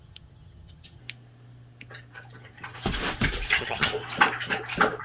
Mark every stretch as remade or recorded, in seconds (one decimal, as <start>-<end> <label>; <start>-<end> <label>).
0.0-1.0 remade; 1.0-3.5 recorded; 3.5-3.9 remade; 3.9-5.0 recorded